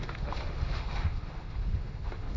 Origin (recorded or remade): remade